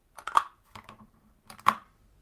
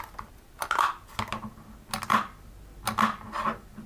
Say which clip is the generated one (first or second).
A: first